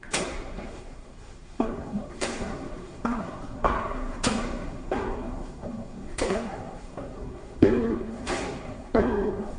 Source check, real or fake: fake